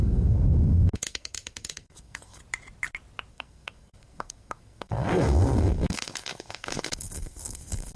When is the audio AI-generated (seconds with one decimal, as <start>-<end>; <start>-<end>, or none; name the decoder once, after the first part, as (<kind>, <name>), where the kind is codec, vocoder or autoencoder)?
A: 0.0-2.4 (codec, SNAC); 3.3-8.0